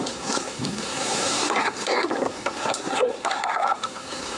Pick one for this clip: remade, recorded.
remade